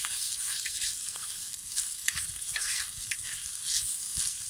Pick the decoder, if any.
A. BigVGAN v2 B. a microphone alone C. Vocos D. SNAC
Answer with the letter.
D